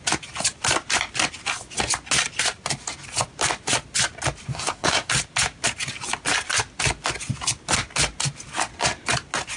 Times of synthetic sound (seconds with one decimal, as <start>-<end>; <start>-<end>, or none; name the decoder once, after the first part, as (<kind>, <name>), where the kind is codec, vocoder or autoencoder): 4.5-5.1 (codec, SNAC)